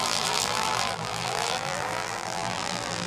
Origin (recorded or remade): remade